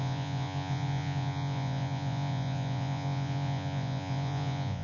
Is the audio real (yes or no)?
no